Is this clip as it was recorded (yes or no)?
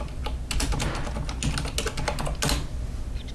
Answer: yes